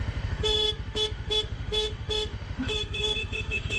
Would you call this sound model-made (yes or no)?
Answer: yes